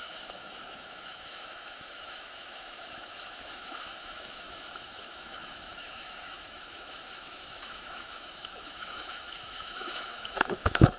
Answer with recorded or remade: remade